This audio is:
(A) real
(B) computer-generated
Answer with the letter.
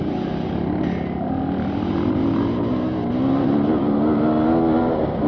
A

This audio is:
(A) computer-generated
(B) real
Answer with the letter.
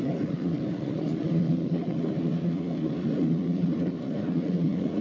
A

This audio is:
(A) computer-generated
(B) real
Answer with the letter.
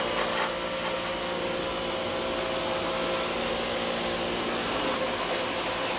B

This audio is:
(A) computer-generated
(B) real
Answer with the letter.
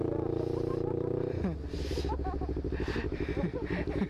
B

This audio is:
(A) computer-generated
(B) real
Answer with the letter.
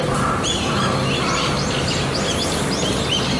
B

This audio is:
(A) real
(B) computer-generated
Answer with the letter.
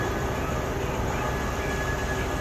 A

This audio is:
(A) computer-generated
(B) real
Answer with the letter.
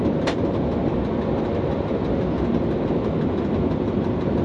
B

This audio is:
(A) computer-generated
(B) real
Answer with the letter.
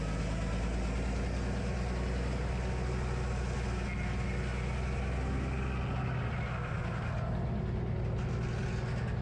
B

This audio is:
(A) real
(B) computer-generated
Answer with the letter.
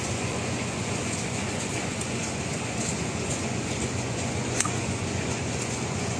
B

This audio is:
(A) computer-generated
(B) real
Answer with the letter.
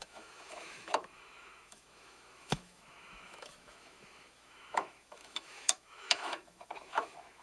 A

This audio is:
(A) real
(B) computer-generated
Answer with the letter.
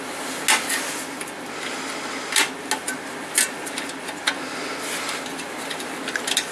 A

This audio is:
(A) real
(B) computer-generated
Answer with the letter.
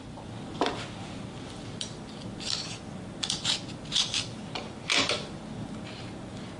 A